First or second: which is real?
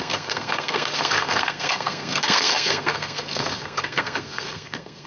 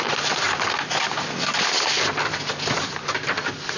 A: second